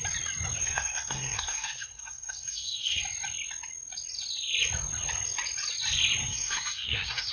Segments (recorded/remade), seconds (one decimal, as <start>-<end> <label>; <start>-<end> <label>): 0.0-0.6 recorded; 0.6-3.0 remade; 3.0-6.2 recorded; 6.2-7.3 remade